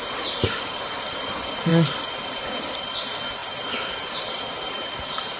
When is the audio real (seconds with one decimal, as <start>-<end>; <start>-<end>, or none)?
0.0-5.4